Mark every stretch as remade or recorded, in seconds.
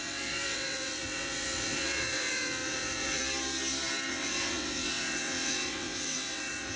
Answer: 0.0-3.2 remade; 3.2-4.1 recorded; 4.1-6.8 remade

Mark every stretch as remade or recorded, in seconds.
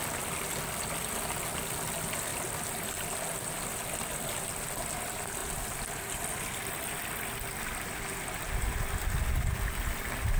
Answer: 0.0-2.3 recorded; 2.3-4.6 remade; 4.6-5.4 recorded; 5.4-7.0 remade; 7.0-10.4 recorded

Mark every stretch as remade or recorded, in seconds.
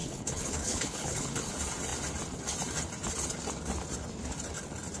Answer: 0.0-1.5 remade; 1.5-5.0 recorded